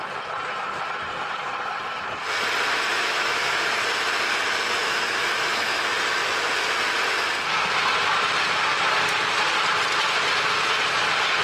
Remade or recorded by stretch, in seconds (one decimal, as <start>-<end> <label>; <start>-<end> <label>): 0.0-2.9 recorded; 2.9-3.7 remade; 3.7-4.8 recorded; 4.8-5.8 remade; 5.8-11.4 recorded